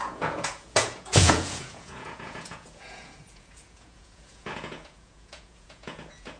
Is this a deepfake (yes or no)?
yes